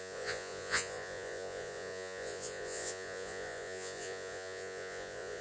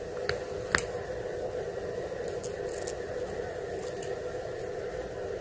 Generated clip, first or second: first